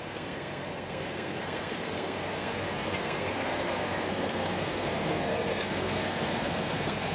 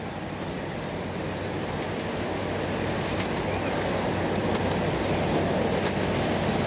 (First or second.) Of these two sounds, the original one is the second